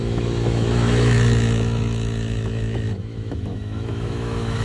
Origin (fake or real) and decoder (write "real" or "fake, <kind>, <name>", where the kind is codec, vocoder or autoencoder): fake, autoencoder, DAC-VAE